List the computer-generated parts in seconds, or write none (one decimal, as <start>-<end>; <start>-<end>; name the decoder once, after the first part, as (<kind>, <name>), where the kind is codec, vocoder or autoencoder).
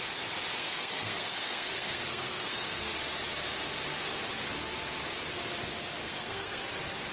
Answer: 0.6-2.9 (codec, SNAC); 6.0-6.6